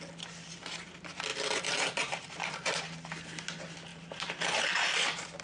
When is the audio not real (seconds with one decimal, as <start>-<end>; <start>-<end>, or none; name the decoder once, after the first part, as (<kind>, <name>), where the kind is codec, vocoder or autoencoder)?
1.3-2.8 (vocoder, BigVGAN v2); 3.9-5.4